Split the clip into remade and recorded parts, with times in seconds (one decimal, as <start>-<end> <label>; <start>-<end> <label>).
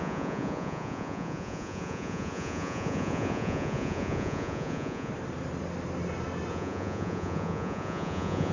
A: 0.0-5.1 remade; 5.1-6.5 recorded; 6.5-8.5 remade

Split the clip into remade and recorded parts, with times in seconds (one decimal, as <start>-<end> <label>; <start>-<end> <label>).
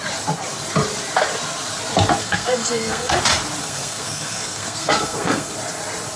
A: 0.0-2.2 recorded; 2.2-3.1 remade; 3.1-3.6 recorded; 3.6-5.5 remade; 5.5-6.2 recorded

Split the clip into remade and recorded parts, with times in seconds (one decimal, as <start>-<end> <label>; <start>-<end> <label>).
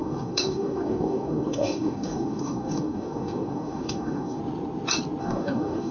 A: 0.0-4.4 remade; 4.4-5.2 recorded; 5.2-5.9 remade